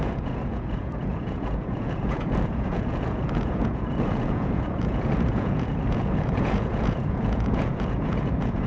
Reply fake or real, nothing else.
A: fake